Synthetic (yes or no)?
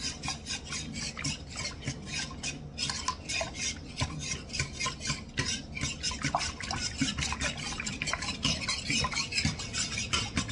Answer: no